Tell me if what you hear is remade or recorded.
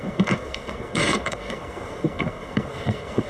remade